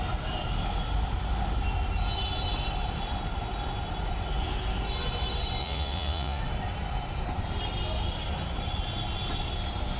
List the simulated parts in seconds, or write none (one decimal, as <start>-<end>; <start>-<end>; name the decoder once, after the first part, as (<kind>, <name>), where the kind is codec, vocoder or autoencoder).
5.6-6.4 (vocoder, Vocos)